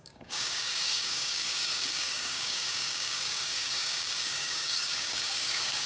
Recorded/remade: remade